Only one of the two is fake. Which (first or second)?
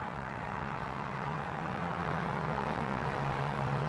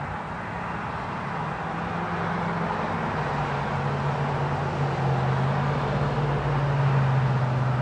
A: first